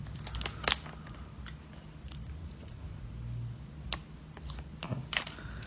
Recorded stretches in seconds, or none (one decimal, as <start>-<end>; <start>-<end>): 0.0-2.4; 3.1-5.7